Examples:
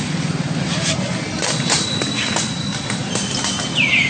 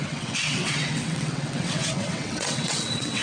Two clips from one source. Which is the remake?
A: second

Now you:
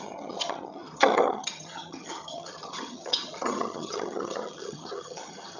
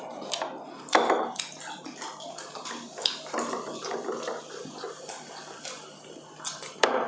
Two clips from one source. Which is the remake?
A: first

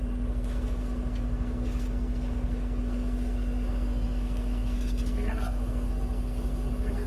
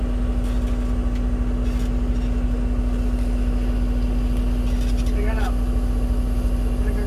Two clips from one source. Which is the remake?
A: first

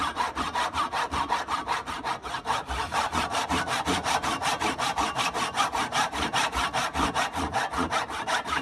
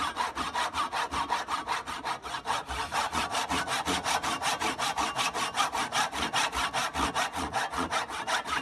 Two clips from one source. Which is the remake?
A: first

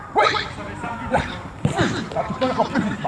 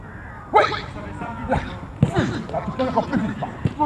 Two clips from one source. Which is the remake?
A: first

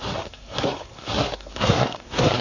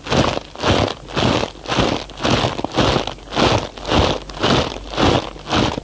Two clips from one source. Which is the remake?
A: first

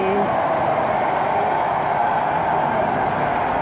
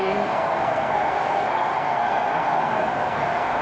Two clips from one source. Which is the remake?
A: second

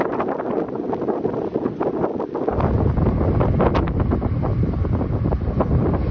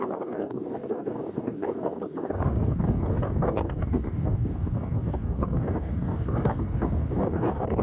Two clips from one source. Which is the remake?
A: second